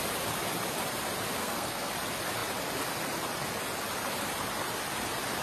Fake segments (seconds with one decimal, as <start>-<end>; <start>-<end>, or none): 1.4-1.9